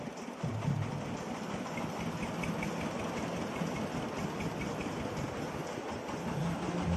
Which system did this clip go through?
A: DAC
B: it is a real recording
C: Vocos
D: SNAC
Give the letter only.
B